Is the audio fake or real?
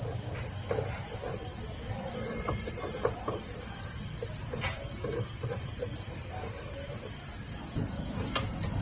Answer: real